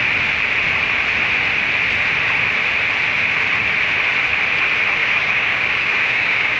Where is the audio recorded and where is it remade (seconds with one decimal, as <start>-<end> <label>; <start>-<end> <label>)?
0.0-5.0 recorded; 5.0-6.6 remade